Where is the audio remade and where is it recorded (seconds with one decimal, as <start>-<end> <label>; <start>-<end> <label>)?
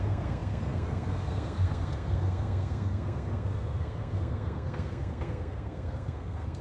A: 0.0-6.6 remade